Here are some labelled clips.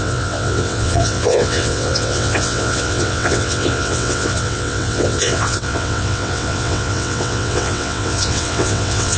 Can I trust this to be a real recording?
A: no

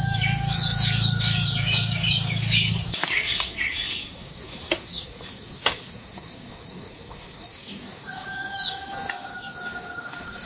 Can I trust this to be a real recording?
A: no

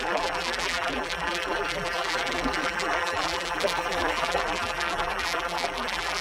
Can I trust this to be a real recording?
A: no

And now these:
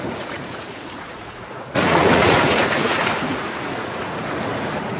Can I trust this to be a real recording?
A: no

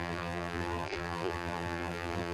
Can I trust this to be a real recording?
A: no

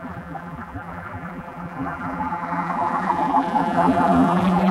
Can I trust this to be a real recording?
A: no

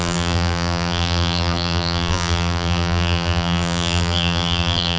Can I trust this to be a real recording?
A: no